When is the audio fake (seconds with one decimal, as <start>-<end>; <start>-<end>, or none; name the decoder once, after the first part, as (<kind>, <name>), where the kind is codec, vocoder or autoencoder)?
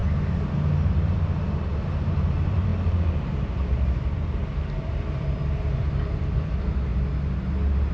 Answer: 0.9-6.9 (vocoder, BigVGAN v2)